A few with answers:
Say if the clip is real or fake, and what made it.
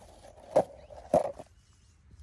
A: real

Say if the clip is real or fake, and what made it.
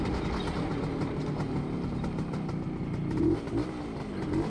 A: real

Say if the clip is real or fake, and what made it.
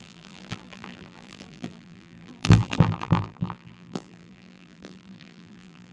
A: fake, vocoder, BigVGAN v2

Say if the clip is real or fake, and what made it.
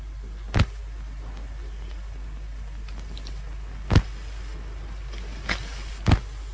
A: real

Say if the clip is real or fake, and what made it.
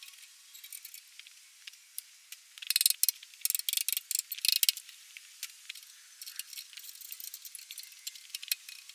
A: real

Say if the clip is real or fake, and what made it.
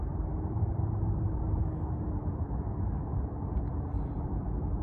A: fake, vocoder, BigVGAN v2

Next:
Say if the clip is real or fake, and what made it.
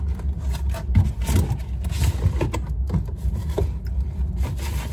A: real